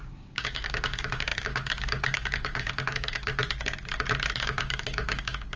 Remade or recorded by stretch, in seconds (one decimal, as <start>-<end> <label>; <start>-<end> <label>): 0.0-3.3 remade; 3.3-4.4 recorded; 4.4-5.6 remade